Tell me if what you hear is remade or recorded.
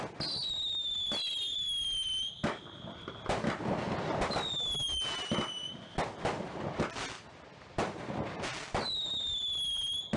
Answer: recorded